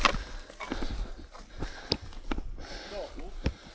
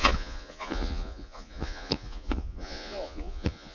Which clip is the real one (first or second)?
first